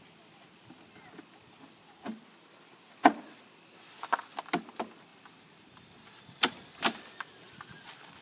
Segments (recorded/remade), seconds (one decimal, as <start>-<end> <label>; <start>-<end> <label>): 0.0-5.1 recorded; 5.1-5.9 remade; 5.9-8.2 recorded